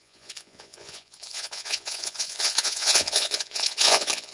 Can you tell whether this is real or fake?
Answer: fake